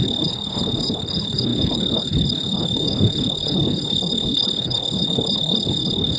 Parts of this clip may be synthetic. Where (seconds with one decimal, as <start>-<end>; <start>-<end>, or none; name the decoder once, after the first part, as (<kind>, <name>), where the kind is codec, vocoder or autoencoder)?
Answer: 0.0-6.2 (codec, HILCodec)